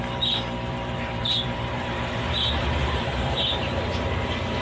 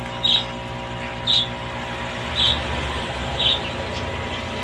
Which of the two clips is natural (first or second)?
second